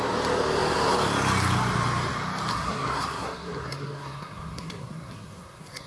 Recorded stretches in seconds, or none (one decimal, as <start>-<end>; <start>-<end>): 0.0-2.5